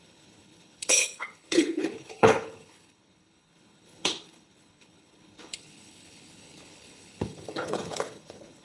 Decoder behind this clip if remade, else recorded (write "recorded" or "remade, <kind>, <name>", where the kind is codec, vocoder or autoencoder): remade, codec, HILCodec